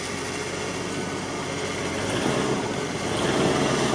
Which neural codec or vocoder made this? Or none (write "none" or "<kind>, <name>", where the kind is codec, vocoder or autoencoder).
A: none